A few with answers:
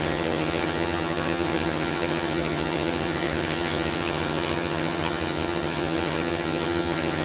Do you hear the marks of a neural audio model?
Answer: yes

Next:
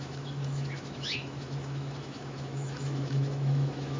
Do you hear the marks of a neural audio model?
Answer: yes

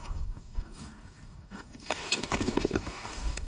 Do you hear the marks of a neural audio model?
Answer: yes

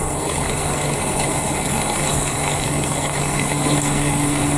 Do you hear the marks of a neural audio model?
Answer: yes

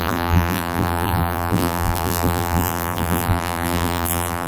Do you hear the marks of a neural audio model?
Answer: yes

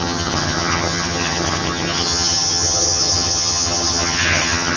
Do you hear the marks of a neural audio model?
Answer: yes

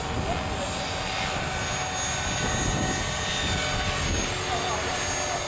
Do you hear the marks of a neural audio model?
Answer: no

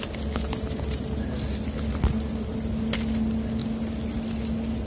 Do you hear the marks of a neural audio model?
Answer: no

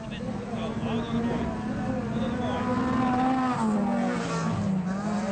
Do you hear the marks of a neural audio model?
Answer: no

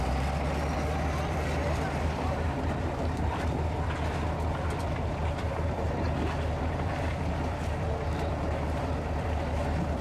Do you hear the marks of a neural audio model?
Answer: yes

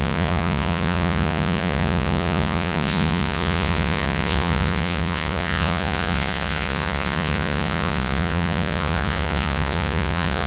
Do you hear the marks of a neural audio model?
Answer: yes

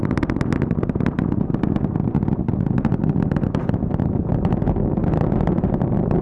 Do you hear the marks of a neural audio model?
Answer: no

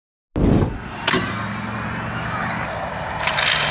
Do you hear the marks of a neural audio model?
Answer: no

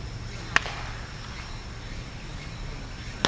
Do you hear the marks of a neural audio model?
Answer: no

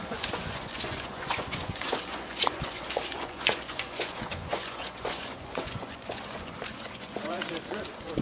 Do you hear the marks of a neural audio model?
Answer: yes